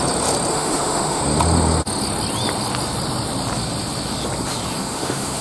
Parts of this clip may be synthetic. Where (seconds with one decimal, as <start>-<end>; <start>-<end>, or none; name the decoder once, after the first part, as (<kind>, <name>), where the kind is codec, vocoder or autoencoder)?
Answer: 0.5-1.2 (autoencoder, DAC-VAE); 4.8-5.4